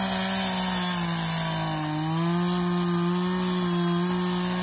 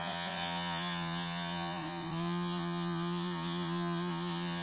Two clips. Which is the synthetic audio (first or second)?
second